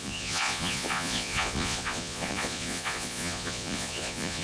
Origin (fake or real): fake